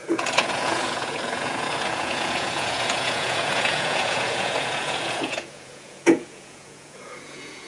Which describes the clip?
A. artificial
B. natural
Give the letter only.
A